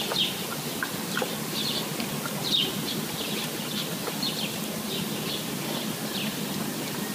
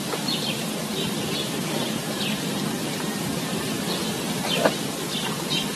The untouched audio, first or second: first